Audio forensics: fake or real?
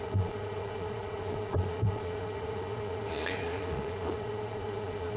fake